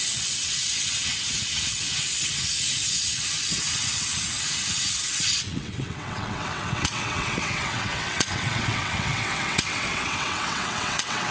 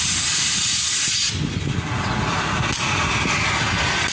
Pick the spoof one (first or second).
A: first